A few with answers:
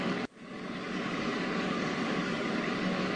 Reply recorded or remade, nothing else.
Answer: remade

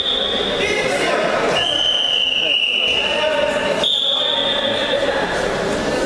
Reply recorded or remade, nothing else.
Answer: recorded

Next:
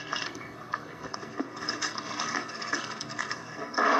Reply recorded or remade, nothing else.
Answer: remade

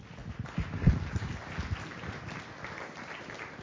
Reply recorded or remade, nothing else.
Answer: recorded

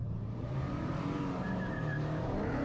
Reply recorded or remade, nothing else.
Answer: remade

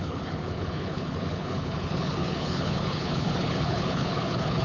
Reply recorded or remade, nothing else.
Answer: remade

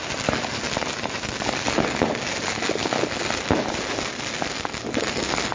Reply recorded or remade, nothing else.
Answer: recorded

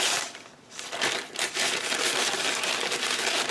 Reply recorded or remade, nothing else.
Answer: recorded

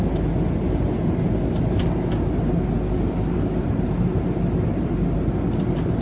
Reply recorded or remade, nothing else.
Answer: recorded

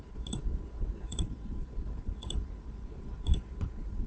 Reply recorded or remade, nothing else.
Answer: remade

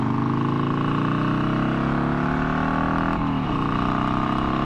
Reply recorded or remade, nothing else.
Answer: recorded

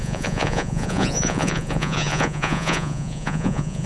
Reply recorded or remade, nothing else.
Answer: remade